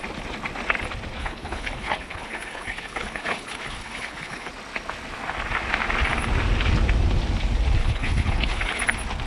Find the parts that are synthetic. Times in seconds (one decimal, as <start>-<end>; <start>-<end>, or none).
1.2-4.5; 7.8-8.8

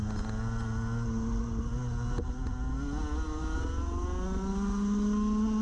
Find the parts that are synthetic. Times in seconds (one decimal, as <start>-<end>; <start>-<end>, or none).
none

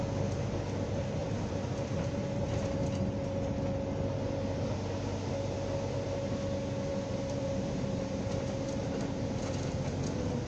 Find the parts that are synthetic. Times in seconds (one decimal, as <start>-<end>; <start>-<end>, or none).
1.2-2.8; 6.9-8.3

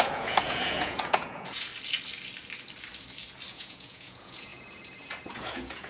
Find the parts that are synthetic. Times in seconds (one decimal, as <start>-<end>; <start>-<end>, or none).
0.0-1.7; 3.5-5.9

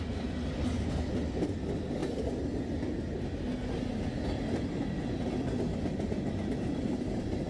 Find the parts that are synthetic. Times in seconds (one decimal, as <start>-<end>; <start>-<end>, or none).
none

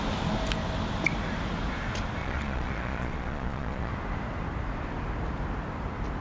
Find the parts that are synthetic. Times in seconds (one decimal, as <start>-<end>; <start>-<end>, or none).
2.2-3.9

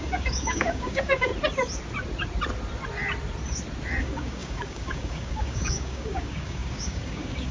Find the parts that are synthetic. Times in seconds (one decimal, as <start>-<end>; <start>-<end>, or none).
0.0-1.3; 4.0-7.5